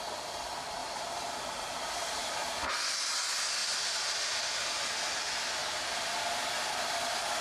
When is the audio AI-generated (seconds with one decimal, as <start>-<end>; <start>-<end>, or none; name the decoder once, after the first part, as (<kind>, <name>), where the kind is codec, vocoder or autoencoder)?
0.8-2.7 (vocoder, BigVGAN v2)